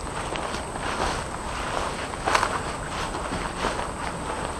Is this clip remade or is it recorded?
recorded